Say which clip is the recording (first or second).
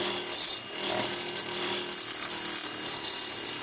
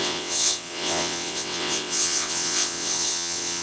first